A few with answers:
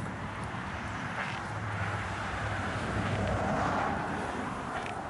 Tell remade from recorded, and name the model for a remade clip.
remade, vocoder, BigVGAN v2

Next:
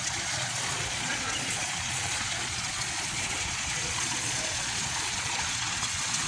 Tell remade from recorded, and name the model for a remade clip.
remade, vocoder, Vocos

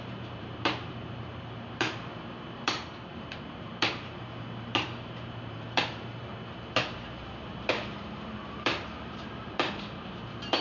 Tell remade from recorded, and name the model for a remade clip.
remade, vocoder, BigVGAN v2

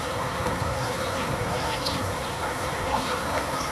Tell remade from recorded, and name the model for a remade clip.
remade, codec, SNAC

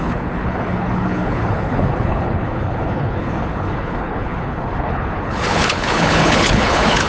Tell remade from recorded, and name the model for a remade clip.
remade, codec, HILCodec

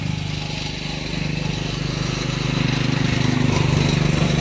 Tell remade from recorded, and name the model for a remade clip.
recorded